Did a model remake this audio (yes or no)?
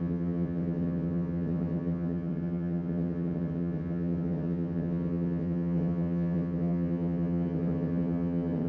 yes